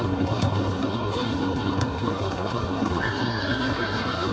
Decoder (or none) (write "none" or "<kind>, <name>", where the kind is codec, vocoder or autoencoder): codec, SNAC